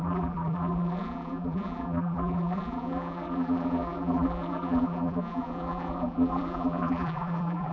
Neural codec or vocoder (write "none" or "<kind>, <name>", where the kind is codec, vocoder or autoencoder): vocoder, BigVGAN v2